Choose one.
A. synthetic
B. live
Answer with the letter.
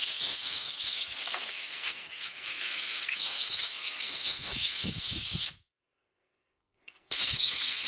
A